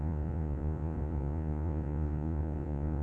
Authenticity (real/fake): fake